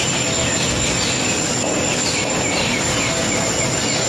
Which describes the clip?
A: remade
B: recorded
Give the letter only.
B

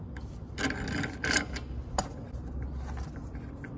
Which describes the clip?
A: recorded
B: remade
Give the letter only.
A